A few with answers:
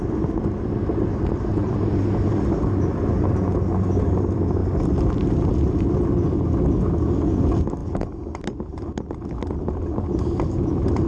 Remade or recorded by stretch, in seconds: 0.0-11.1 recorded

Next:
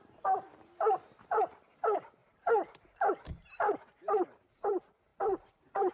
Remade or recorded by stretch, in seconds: 0.0-5.9 remade